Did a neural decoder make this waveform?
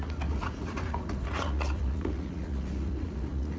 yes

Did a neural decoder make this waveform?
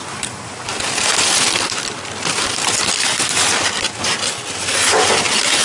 no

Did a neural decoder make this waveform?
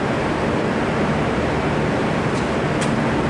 no